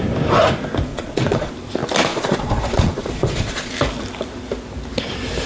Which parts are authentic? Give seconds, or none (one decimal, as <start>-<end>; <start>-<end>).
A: 0.0-0.9; 1.5-2.1; 3.7-5.5